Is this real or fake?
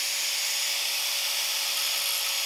real